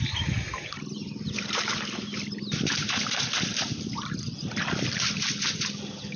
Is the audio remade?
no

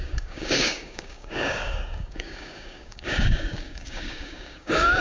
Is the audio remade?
yes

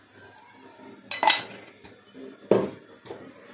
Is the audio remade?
no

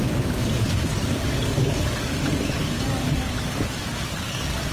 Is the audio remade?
yes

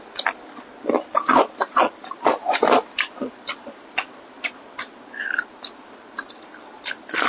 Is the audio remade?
no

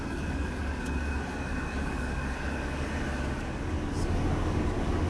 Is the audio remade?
yes